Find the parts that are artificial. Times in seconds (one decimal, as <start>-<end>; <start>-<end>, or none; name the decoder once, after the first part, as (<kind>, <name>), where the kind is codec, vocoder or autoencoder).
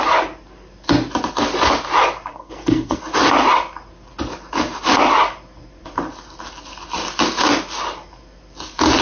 2.3-3.0 (codec, SNAC)